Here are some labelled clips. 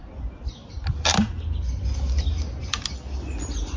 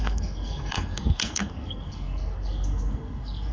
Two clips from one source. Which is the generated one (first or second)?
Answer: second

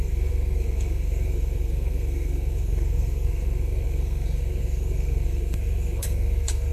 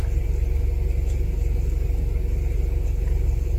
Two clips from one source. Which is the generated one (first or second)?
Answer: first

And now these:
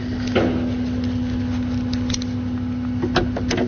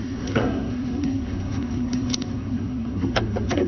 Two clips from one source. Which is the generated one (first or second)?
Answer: second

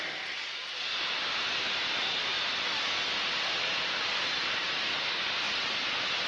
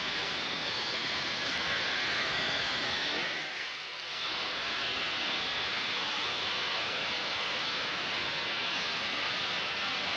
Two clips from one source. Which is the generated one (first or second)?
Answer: second